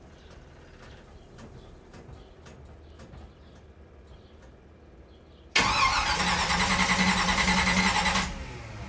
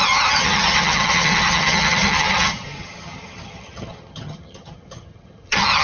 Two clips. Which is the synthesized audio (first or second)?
second